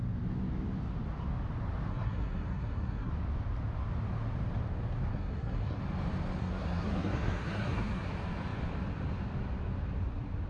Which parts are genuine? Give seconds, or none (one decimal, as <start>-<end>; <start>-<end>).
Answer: 0.0-1.9; 3.1-5.1; 5.8-6.4; 8.1-10.5